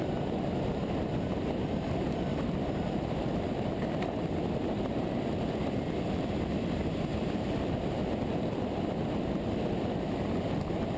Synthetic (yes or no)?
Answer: no